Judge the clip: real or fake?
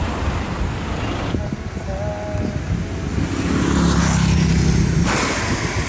real